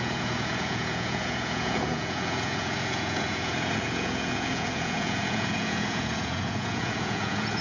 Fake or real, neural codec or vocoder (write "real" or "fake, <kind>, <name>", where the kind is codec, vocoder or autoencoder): fake, vocoder, Vocos